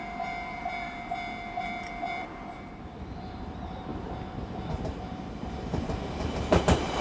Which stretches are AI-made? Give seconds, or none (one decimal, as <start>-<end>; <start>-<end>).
0.0-3.9; 4.8-7.0